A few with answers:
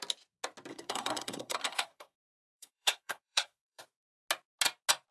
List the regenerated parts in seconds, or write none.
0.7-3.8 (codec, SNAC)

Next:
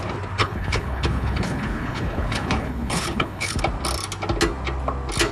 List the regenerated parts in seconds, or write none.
0.4-3.6 (codec, HILCodec)

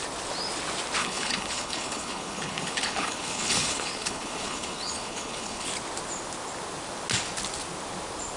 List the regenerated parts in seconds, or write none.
1.0-5.7 (codec, HILCodec)

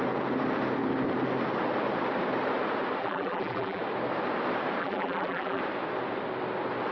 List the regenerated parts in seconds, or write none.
3.0-3.8 (vocoder, BigVGAN v2); 4.8-5.6

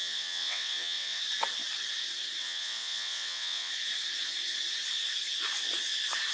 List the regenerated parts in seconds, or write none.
0.0-1.2 (vocoder, WaveNeXt); 2.4-3.7

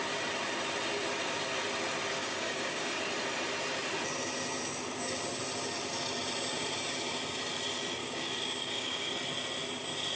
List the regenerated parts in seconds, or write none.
2.2-3.0 (codec, DAC); 8.0-9.1